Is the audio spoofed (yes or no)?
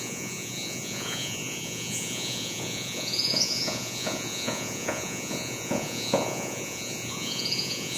yes